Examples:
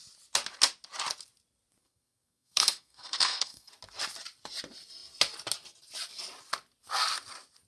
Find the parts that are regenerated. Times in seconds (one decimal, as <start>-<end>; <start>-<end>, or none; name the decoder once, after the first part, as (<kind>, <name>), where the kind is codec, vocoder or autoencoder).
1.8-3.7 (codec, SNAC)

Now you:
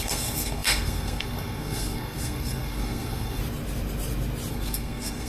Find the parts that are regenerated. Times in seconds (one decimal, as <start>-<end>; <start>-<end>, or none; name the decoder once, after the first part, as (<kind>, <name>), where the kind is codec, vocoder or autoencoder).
0.0-3.4 (codec, SNAC); 4.5-5.3

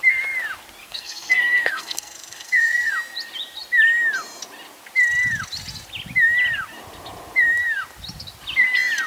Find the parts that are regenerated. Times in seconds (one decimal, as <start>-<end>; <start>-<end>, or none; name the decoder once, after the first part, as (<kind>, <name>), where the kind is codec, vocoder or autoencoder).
0.8-2.9 (codec, SNAC)

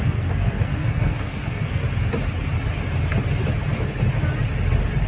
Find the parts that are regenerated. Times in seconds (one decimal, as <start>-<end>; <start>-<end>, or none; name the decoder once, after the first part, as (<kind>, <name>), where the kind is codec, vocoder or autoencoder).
0.0-1.8 (codec, SNAC)

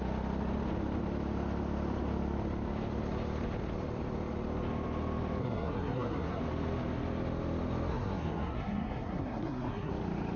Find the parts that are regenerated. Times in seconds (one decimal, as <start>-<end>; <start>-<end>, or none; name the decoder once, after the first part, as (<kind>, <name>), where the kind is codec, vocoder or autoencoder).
5.4-6.4 (codec, SNAC); 7.9-9.9

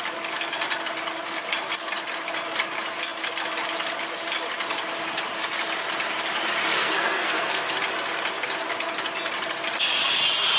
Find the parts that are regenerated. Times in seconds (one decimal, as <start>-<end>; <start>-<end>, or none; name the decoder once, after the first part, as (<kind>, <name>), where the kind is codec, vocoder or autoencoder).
6.8-7.6 (codec, SNAC)